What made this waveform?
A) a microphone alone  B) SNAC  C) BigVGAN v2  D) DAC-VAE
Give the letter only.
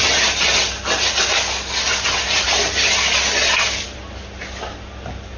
A